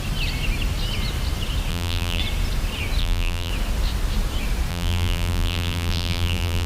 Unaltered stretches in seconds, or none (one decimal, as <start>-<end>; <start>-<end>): 0.0-1.7; 2.2-3.0; 3.5-4.7